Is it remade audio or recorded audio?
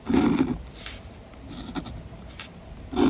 recorded